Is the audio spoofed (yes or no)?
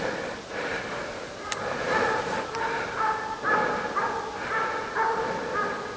no